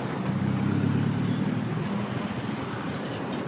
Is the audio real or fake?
real